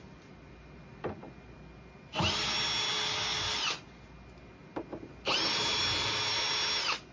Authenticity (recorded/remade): recorded